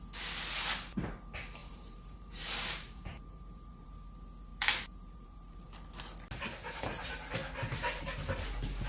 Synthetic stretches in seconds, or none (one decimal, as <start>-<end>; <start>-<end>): 1.6-3.9; 4.5-5.7